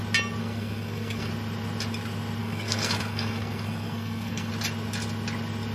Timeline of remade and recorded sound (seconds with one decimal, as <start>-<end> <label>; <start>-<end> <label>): 0.0-0.4 recorded; 0.4-1.3 remade; 1.3-2.4 recorded; 2.4-4.5 remade; 4.5-5.7 recorded